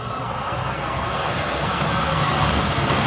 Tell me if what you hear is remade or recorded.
remade